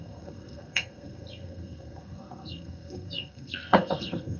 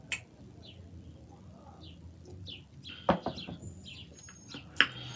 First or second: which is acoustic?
second